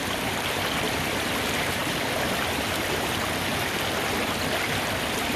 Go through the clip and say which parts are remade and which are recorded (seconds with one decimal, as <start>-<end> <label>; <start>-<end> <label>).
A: 0.0-5.4 recorded